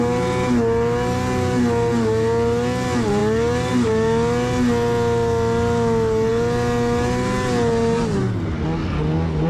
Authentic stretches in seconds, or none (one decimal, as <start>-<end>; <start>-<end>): 0.0-9.5